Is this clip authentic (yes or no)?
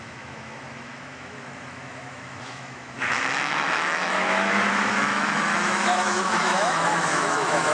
no